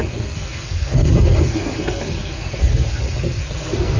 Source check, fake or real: fake